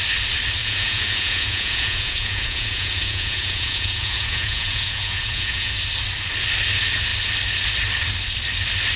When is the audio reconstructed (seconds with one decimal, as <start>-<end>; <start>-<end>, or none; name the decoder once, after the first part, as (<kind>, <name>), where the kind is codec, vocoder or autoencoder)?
0.6-5.7 (vocoder, Vocos)